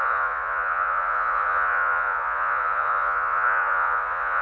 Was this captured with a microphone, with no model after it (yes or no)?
no